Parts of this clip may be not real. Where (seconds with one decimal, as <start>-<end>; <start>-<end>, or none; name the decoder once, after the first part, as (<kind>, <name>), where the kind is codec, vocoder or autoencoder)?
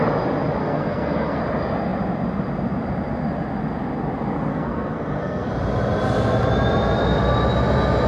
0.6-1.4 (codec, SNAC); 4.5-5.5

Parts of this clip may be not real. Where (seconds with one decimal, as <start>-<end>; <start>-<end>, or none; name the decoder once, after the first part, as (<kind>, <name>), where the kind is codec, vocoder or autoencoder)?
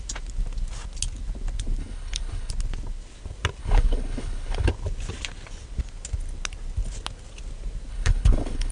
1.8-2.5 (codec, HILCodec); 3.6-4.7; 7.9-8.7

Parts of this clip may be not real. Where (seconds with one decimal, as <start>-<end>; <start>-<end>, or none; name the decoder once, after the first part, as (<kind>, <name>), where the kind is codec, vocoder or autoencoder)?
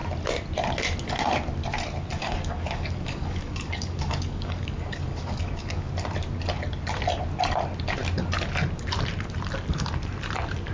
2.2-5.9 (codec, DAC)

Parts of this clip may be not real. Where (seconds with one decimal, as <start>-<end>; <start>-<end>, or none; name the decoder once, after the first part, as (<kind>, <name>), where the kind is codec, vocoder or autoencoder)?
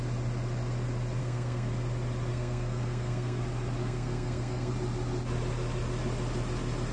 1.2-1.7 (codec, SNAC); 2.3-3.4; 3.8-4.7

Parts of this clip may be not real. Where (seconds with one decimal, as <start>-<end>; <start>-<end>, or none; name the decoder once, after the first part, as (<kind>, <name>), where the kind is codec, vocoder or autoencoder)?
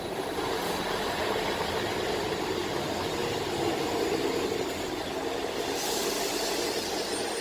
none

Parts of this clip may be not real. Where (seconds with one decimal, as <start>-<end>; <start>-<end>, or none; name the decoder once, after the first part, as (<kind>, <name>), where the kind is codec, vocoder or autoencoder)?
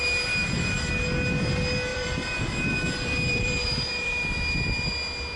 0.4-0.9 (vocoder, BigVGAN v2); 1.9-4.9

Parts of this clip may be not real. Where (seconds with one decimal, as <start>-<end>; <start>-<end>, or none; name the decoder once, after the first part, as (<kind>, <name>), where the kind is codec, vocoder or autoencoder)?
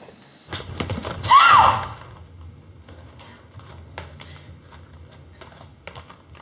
none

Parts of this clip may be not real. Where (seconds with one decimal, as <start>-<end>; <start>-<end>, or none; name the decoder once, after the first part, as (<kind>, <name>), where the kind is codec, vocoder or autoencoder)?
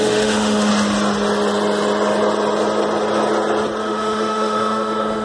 0.0-0.7 (autoencoder, DAC-VAE); 3.8-5.2